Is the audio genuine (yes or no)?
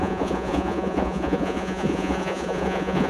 no